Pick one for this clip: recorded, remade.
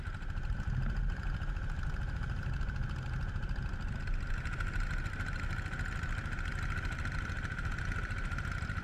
recorded